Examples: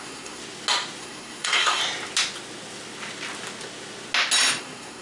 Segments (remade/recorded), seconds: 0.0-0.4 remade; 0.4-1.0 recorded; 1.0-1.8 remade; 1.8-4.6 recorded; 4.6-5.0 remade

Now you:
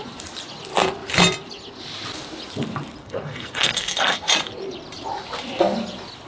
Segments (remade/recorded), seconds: 0.0-3.0 recorded; 3.0-4.3 remade; 4.3-6.3 recorded

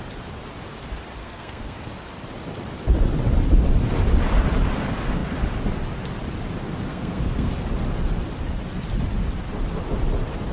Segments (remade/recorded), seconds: 0.0-1.2 recorded; 1.2-1.9 remade; 1.9-6.9 recorded; 6.9-7.5 remade; 7.5-10.5 recorded